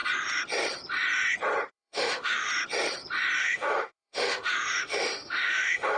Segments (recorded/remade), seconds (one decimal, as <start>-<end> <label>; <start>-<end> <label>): 0.0-1.7 recorded; 1.7-2.5 remade; 2.5-3.4 recorded; 3.4-6.0 remade